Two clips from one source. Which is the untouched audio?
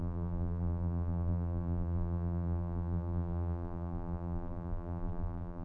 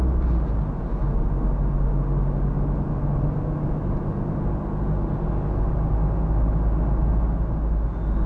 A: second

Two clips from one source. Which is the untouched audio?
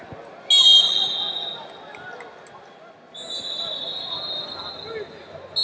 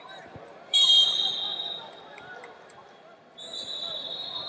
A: first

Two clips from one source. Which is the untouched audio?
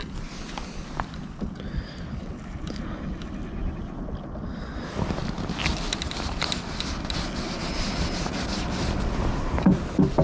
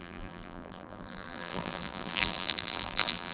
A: first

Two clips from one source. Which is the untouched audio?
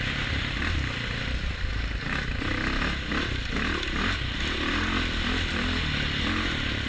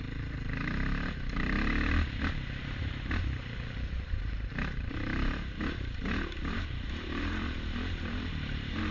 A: first